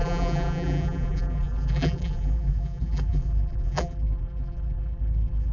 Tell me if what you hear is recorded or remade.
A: remade